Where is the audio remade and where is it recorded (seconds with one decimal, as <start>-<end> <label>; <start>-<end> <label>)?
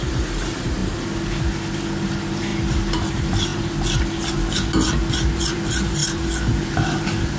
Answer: 0.0-3.5 remade; 3.5-5.4 recorded; 5.4-6.0 remade; 6.0-6.7 recorded; 6.7-7.4 remade